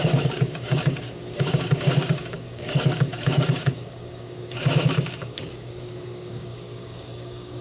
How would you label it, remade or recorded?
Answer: remade